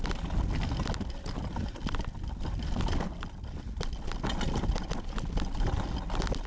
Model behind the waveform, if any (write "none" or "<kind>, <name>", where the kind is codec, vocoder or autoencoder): none